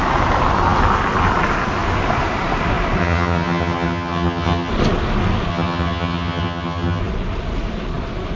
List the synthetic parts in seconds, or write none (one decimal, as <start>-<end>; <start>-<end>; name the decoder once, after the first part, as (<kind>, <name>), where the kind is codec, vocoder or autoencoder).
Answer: 3.0-4.7 (vocoder, HiFi-GAN); 5.5-7.0

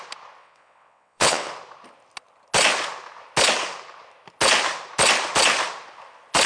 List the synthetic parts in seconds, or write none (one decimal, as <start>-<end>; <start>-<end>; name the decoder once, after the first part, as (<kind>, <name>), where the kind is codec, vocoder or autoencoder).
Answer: 0.4-1.5 (vocoder, WaveNeXt)

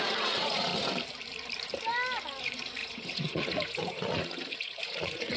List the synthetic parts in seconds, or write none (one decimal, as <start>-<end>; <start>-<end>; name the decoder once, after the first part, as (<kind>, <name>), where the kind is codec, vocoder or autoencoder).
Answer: 0.0-0.7 (vocoder, Vocos); 2.4-5.4

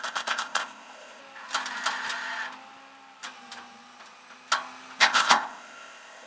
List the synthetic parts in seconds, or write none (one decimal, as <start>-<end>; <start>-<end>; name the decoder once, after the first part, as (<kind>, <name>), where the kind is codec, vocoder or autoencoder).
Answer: 0.0-1.2 (codec, ZipCodec); 5.0-6.3